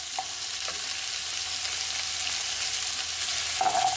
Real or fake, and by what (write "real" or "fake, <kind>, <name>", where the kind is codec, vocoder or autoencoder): real